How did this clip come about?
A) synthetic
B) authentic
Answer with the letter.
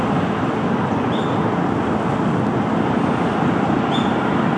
B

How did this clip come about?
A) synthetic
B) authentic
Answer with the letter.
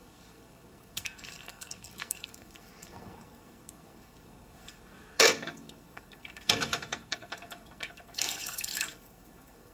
A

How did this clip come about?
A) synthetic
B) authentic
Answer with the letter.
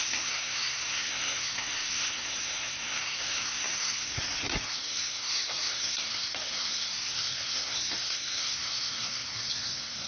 A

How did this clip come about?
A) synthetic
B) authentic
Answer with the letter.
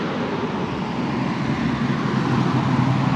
B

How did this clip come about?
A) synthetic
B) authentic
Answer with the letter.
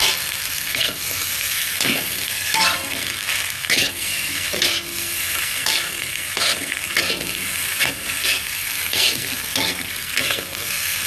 A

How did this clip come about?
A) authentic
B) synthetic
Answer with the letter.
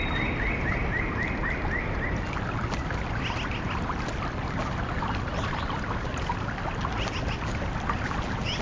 A